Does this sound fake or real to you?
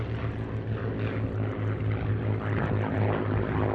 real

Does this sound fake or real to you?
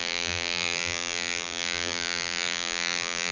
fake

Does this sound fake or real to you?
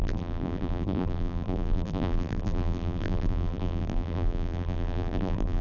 fake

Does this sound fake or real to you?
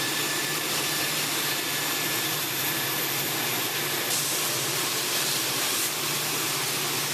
fake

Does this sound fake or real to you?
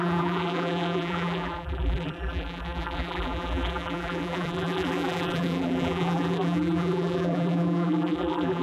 fake